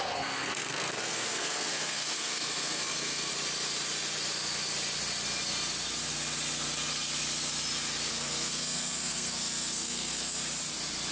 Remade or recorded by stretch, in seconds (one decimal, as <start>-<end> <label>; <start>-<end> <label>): 0.0-3.3 remade; 3.3-8.1 recorded; 8.1-10.4 remade; 10.4-11.1 recorded